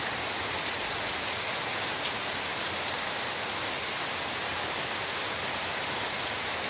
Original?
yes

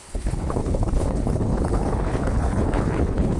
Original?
no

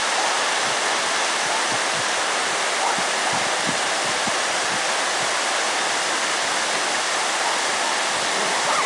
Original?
yes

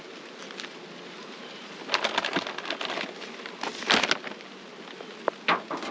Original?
yes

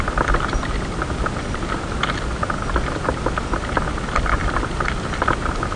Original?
yes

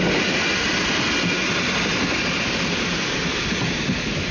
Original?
yes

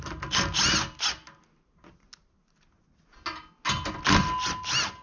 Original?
yes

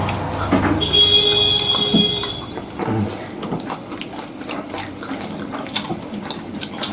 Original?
yes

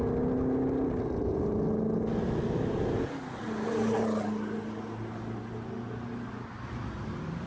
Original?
yes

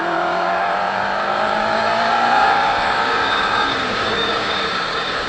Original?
no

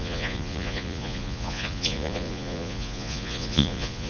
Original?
no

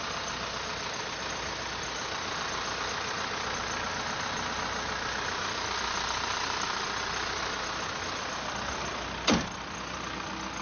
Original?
yes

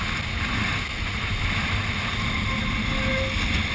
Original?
yes